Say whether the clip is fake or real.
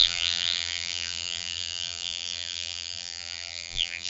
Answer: fake